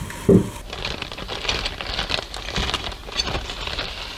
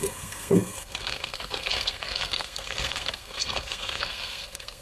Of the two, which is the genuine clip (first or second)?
first